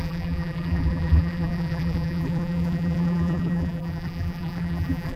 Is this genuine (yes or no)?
no